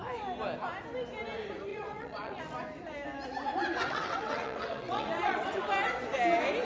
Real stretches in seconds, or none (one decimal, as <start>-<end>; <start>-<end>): 0.0-1.7; 2.4-3.7; 5.7-6.6